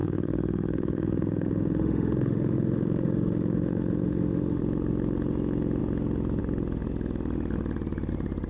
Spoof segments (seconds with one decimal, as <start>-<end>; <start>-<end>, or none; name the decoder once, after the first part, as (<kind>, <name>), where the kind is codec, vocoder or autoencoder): 0.0-4.6 (autoencoder, DAC-VAE)